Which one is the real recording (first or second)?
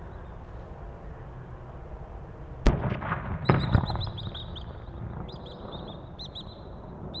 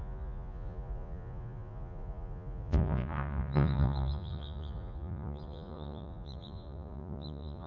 first